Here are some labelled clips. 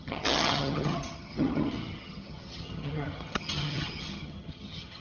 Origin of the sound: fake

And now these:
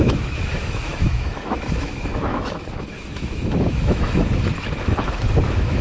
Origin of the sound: fake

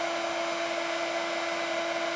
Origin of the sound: real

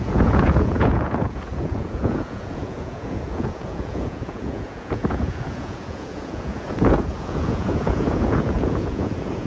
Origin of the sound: fake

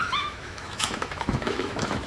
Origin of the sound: fake